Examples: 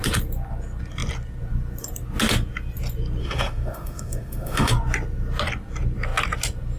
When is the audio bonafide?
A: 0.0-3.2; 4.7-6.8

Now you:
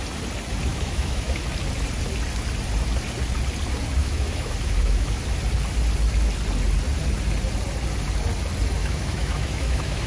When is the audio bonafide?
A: 0.0-0.7; 1.4-4.0; 5.2-8.8

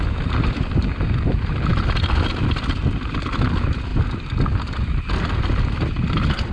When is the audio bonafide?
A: 0.0-6.5

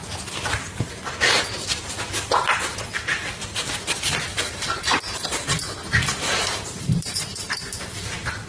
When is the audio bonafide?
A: 0.0-4.3; 7.5-8.5

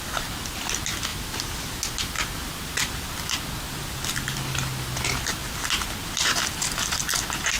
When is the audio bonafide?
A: 0.0-7.6